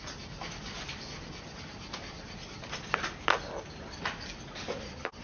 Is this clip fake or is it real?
real